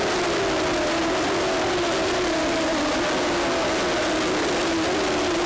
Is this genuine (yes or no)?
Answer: yes